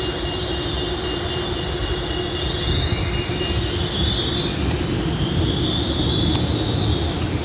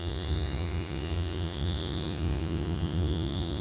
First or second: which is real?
first